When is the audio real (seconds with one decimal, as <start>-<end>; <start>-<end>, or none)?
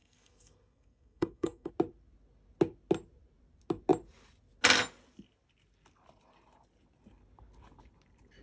1.7-8.4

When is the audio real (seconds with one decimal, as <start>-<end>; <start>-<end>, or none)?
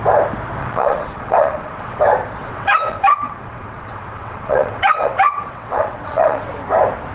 0.0-0.6; 2.0-2.4; 6.5-7.1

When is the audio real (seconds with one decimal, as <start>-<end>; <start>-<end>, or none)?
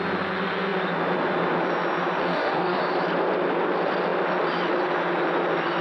0.0-2.2; 2.8-5.8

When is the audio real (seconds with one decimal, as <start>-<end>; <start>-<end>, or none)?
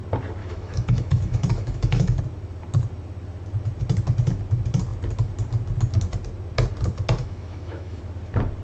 0.0-0.4; 2.2-7.2; 8.0-8.6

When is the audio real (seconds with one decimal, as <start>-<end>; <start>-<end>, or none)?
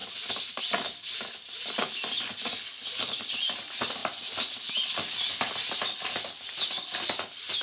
0.0-7.6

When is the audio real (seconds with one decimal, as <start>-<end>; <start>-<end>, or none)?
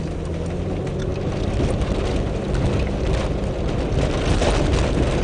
0.0-5.2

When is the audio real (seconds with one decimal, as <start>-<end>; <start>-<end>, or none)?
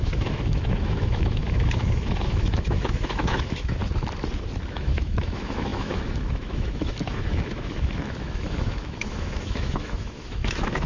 3.8-4.7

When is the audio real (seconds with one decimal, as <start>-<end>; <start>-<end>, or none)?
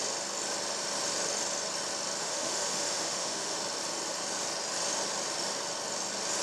0.0-2.2; 3.6-6.4